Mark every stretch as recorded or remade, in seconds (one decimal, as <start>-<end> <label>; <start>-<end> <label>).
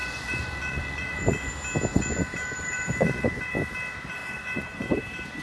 0.0-1.5 remade; 1.5-1.9 recorded; 1.9-3.5 remade; 3.5-4.2 recorded; 4.2-5.0 remade; 5.0-5.4 recorded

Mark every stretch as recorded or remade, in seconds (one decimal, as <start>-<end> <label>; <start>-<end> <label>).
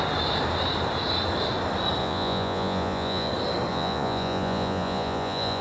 0.0-2.0 recorded; 2.0-3.3 remade; 3.3-3.7 recorded; 3.7-5.6 remade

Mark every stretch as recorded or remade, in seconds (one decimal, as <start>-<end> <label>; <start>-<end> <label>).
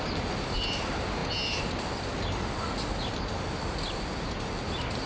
0.0-5.1 recorded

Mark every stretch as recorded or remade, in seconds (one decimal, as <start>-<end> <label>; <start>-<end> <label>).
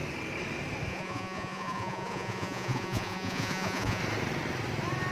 0.0-0.9 recorded; 0.9-4.0 remade; 4.0-5.1 recorded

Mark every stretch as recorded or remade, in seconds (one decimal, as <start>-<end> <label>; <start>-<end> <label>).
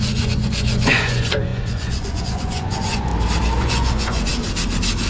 0.0-3.1 remade; 3.1-3.6 recorded; 3.6-4.3 remade; 4.3-5.1 recorded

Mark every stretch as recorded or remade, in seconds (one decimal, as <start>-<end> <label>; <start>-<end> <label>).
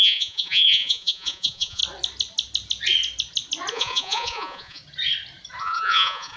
0.0-1.8 remade; 1.8-3.7 recorded; 3.7-4.8 remade; 4.8-5.6 recorded; 5.6-6.4 remade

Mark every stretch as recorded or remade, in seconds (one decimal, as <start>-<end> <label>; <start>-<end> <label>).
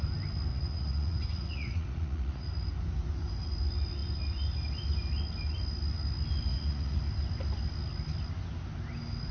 0.0-0.5 recorded; 0.5-2.5 remade; 2.5-6.5 recorded; 6.5-7.0 remade; 7.0-9.3 recorded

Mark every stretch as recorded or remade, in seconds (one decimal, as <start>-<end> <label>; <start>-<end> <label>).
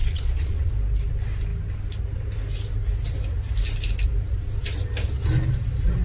0.0-0.7 remade; 0.7-6.0 recorded